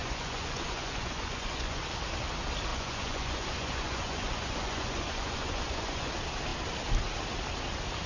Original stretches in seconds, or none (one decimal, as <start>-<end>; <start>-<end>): 1.8-2.7; 6.1-8.1